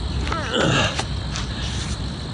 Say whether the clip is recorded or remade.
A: recorded